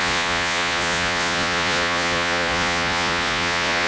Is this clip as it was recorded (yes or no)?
no